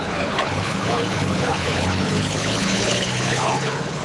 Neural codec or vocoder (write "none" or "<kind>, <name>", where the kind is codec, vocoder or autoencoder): codec, HILCodec